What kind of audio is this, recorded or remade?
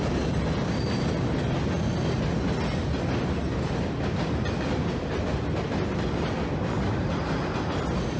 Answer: recorded